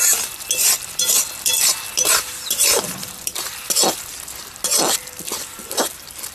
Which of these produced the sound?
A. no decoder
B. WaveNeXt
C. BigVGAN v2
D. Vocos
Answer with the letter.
A